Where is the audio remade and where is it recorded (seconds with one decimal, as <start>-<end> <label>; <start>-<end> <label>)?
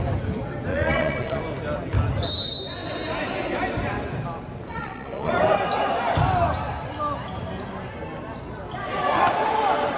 0.0-0.7 recorded; 0.7-1.4 remade; 1.4-4.7 recorded; 4.7-5.3 remade; 5.3-10.0 recorded